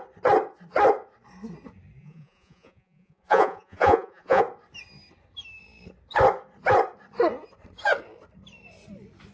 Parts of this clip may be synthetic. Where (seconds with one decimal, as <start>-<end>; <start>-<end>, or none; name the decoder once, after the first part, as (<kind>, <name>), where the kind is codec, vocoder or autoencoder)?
2.0-4.4 (vocoder, Vocos)